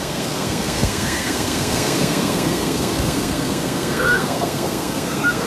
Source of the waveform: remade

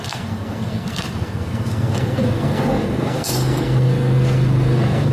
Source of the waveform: remade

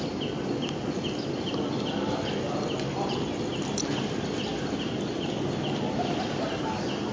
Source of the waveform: recorded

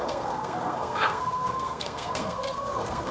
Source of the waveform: remade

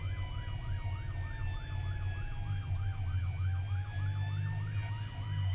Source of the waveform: recorded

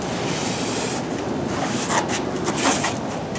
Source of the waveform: recorded